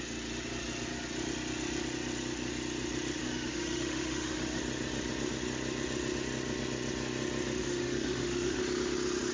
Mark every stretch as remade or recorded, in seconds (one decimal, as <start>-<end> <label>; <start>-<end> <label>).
0.0-3.2 recorded; 3.2-4.6 remade; 4.6-7.6 recorded; 7.6-8.6 remade; 8.6-9.3 recorded